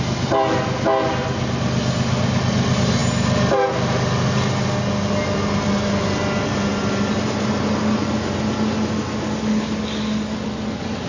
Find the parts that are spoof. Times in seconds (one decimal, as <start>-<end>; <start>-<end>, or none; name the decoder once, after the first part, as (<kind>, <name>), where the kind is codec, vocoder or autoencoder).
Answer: none